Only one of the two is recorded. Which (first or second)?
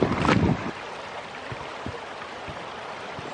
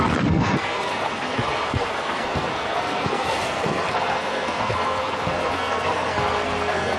first